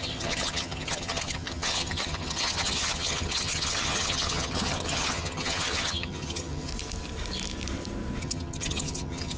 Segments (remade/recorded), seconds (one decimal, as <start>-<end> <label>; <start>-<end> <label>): 0.0-6.7 remade; 6.7-8.2 recorded; 8.2-9.4 remade